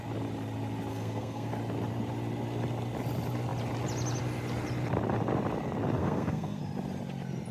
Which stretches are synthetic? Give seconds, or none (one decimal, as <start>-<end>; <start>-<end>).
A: 0.9-1.5; 6.0-6.6